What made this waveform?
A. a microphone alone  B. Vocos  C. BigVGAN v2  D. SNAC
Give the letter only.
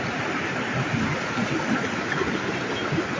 A